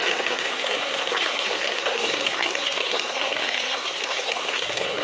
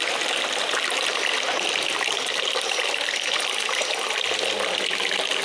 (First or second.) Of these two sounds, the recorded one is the second